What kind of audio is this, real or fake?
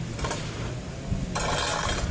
real